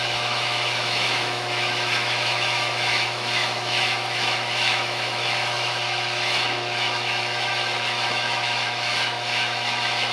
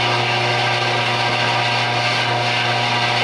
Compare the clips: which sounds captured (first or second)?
second